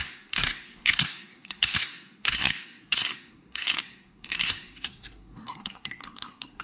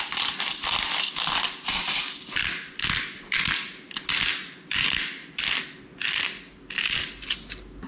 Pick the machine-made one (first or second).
first